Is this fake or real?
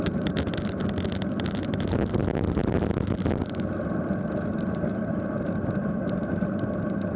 real